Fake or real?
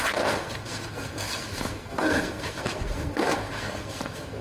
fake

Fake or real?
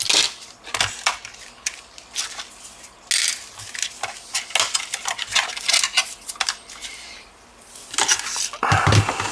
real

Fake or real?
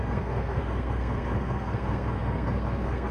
fake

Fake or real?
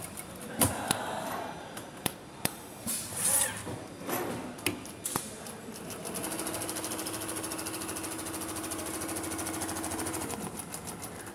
real